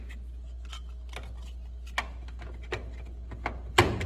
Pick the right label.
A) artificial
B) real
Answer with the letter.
B